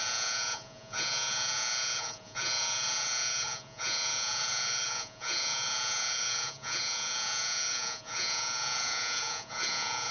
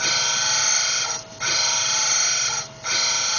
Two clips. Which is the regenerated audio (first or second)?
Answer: first